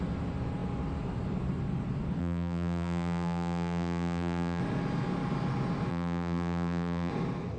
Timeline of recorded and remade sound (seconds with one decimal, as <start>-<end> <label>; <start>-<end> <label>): 0.0-2.2 recorded; 2.2-4.6 remade; 4.6-5.9 recorded; 5.9-7.1 remade; 7.1-7.6 recorded